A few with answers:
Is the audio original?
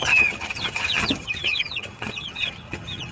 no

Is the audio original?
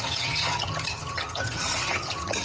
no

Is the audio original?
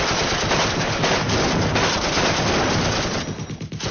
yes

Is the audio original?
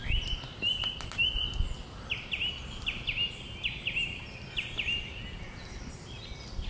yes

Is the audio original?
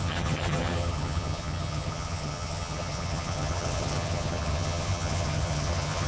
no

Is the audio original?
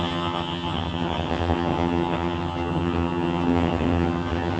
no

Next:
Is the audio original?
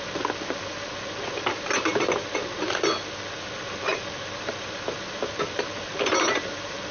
yes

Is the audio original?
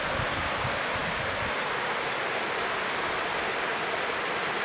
yes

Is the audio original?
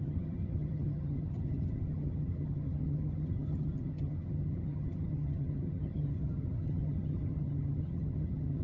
no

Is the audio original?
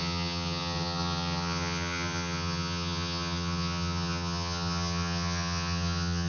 no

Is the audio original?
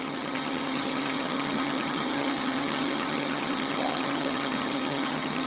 no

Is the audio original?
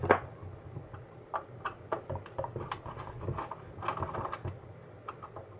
yes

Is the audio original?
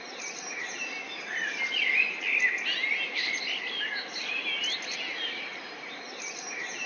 yes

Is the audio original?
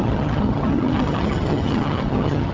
no